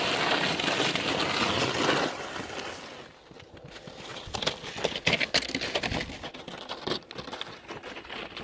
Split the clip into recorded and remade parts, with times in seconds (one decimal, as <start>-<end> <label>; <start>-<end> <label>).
0.0-8.4 recorded